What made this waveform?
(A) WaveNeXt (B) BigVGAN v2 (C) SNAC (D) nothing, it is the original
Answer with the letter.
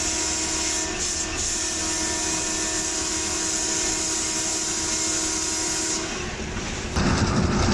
D